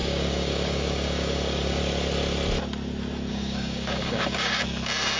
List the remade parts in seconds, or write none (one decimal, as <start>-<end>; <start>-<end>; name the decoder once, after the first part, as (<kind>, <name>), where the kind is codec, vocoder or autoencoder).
0.0-1.8 (codec, DAC); 3.3-4.6